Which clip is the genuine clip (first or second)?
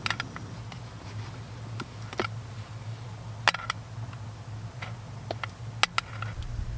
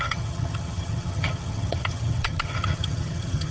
first